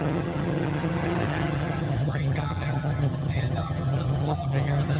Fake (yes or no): yes